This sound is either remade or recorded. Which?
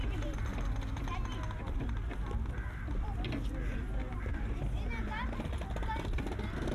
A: recorded